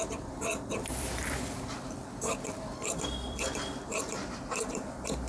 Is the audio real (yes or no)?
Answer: no